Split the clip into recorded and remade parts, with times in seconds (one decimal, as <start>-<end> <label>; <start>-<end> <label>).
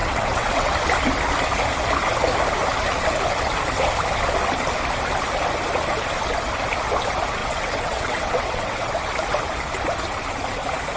0.0-0.7 remade; 0.7-7.4 recorded; 7.4-8.9 remade; 8.9-11.0 recorded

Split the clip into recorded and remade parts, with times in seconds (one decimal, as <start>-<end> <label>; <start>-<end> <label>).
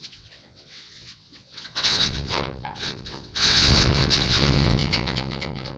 0.0-5.8 remade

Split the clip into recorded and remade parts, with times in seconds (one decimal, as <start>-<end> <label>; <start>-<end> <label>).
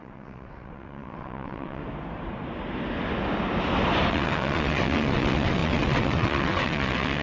0.0-1.8 remade; 1.8-4.1 recorded; 4.1-7.2 remade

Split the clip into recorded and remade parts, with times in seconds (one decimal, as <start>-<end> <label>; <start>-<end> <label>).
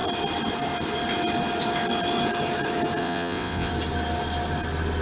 0.0-3.0 recorded; 3.0-3.7 remade; 3.7-5.0 recorded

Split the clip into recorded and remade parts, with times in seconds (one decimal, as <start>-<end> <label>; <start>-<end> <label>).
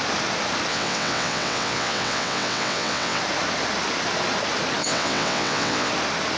0.0-0.7 recorded; 0.7-3.2 remade; 3.2-4.8 recorded; 4.8-5.9 remade; 5.9-6.4 recorded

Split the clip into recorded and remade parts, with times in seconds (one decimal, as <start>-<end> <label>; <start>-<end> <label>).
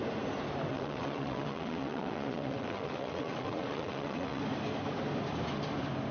0.0-0.7 recorded; 0.7-4.4 remade; 4.4-6.1 recorded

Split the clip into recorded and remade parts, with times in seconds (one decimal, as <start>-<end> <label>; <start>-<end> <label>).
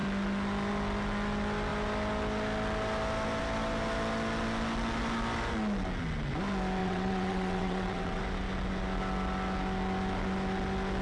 0.0-6.8 recorded; 6.8-8.2 remade; 8.2-11.0 recorded